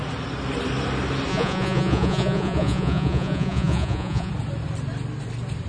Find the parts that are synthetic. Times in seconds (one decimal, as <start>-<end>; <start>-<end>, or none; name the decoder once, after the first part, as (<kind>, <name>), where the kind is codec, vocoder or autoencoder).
1.3-4.3 (vocoder, Vocos)